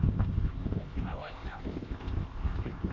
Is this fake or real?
fake